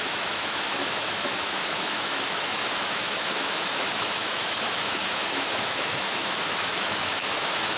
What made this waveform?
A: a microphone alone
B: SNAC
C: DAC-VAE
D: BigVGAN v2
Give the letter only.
C